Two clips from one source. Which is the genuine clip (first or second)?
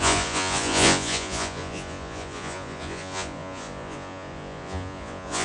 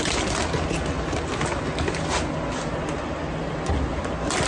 second